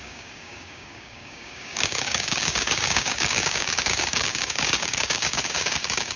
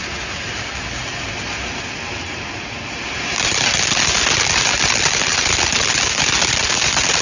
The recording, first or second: second